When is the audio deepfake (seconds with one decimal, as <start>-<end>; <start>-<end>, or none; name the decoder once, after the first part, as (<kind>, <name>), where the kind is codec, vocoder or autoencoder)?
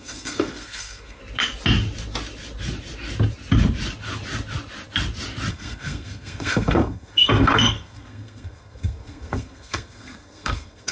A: 0.0-1.2 (codec, SNAC); 5.5-10.9